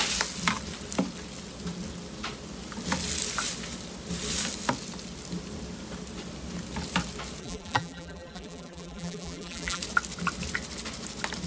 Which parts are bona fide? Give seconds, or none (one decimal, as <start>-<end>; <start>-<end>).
0.0-7.4; 9.8-11.5